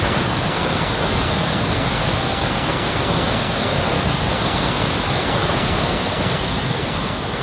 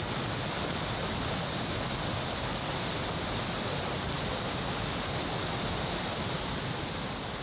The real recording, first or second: second